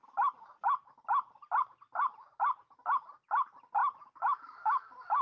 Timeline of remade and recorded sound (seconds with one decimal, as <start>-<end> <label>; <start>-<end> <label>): 0.0-3.8 recorded; 3.8-5.2 remade